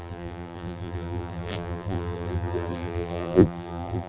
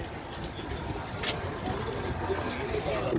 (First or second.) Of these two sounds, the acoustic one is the second